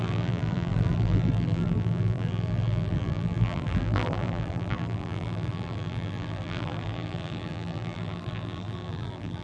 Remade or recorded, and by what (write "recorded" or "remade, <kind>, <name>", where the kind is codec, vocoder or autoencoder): remade, vocoder, BigVGAN v2